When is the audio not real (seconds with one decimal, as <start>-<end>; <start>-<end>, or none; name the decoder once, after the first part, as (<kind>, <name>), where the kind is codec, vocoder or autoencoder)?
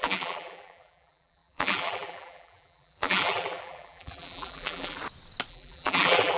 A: 0.0-5.0 (vocoder, BigVGAN v2); 5.5-6.4